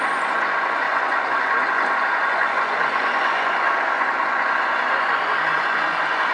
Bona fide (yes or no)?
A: no